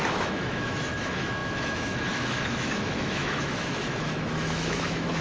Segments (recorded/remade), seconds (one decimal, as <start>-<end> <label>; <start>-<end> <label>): 0.0-5.2 remade